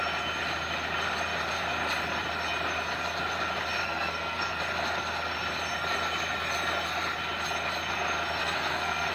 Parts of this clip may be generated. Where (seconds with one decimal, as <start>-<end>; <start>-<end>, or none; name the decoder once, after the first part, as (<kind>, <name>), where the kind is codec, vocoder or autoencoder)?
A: 3.8-4.6 (codec, SNAC); 8.4-9.1